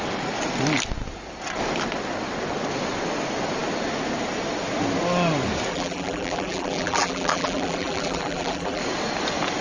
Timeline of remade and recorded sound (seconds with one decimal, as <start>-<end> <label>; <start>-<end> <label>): 0.0-5.7 recorded; 5.7-8.8 remade; 8.8-9.6 recorded